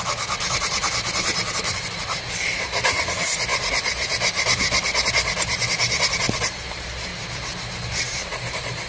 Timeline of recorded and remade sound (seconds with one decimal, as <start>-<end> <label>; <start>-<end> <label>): 0.0-7.1 remade; 7.1-8.0 recorded; 8.0-8.9 remade